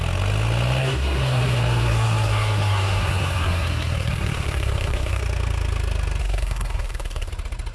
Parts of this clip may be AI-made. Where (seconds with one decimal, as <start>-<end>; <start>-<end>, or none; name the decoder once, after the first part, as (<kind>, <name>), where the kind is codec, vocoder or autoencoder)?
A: 0.8-5.2 (codec, SNAC); 6.2-7.3